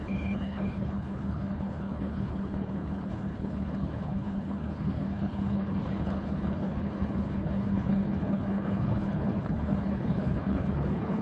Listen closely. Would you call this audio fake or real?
fake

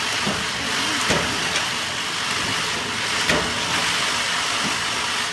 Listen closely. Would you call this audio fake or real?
real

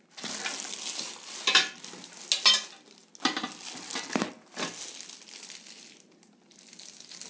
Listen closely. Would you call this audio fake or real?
real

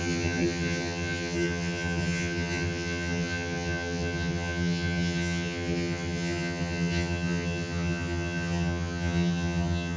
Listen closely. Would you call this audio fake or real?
fake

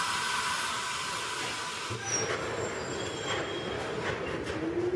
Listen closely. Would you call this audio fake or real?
real